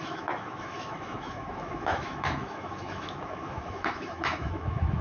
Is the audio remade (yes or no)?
yes